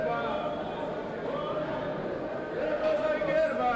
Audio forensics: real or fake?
real